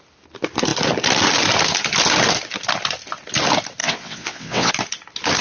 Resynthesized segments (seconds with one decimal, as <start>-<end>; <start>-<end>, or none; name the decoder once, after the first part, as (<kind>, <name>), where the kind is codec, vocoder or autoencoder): 3.8-4.7 (vocoder, WaveNeXt)